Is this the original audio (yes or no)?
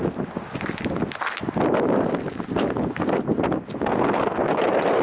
yes